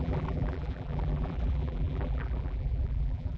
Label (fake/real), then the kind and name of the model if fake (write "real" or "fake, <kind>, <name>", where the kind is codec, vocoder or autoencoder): fake, vocoder, BigVGAN v2